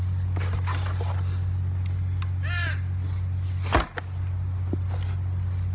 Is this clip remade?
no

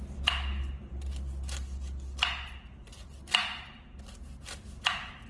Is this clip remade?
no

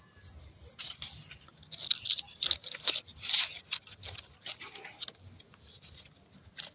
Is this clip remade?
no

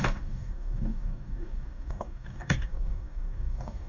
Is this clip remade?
yes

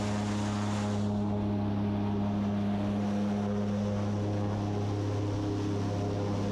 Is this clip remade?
no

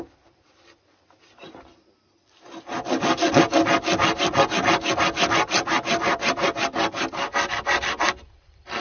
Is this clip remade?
no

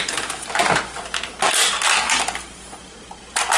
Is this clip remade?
no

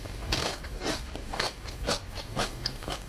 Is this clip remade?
yes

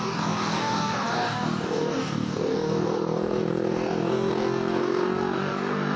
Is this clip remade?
yes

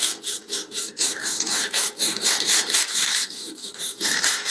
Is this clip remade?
yes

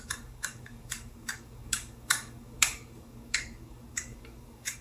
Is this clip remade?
yes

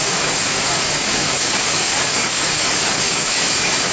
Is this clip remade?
yes